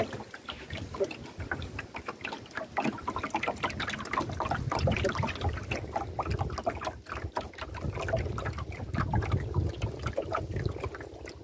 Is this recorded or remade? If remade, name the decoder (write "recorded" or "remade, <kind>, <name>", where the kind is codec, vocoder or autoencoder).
recorded